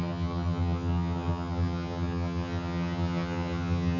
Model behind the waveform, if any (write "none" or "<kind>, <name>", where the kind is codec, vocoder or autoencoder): vocoder, HiFi-GAN